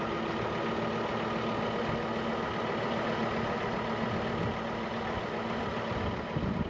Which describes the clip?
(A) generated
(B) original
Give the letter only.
B